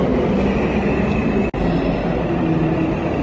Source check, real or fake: real